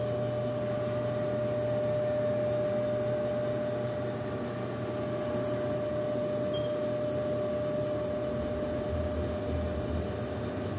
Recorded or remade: recorded